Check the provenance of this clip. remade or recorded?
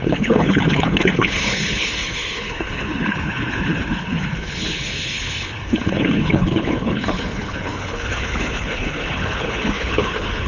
remade